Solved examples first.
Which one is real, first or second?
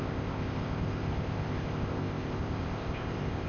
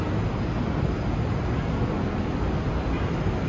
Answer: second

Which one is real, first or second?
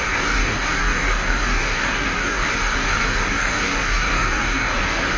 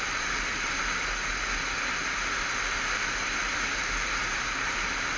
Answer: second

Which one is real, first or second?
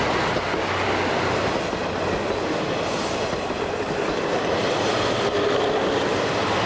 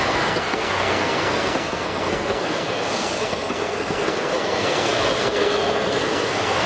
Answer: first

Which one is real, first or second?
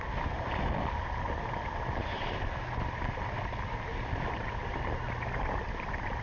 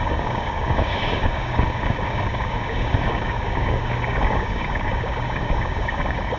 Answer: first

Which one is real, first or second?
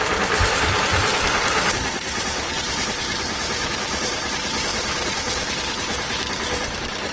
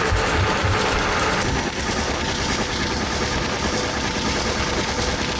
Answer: second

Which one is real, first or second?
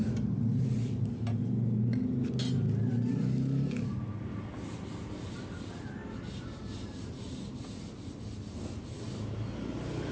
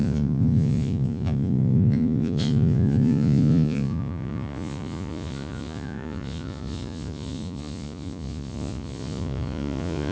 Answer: first